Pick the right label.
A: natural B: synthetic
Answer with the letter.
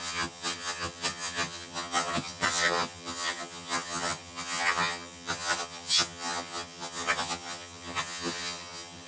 B